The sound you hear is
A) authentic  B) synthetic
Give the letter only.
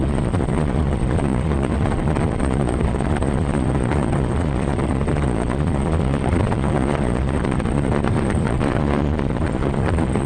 B